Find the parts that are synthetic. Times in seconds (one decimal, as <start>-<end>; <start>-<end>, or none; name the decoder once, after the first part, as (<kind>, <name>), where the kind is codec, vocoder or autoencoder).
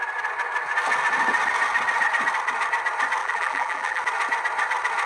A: 3.2-4.0 (vocoder, BigVGAN v2)